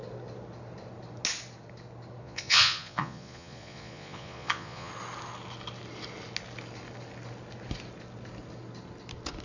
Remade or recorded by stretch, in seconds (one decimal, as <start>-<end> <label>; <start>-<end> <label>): 0.0-2.2 recorded; 2.2-4.9 remade; 4.9-9.4 recorded